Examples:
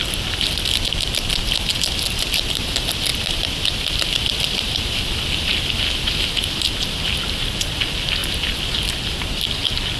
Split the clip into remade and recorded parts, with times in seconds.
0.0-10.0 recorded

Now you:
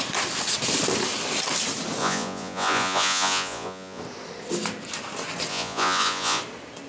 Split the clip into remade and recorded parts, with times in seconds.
0.0-2.0 recorded; 2.0-4.0 remade; 4.0-5.5 recorded; 5.5-6.4 remade; 6.4-6.9 recorded

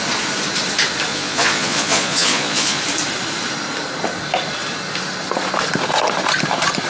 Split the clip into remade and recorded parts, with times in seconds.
0.0-1.1 recorded; 1.1-2.8 remade; 2.8-6.9 recorded

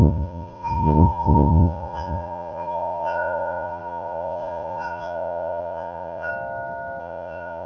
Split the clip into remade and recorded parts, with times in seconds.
0.0-6.3 remade; 6.3-7.0 recorded; 7.0-7.7 remade

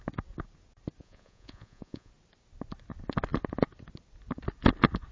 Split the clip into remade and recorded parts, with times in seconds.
0.0-1.0 recorded; 1.0-2.1 remade; 2.1-5.1 recorded